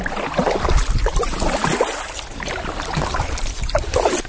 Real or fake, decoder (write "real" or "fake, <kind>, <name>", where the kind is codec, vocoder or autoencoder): real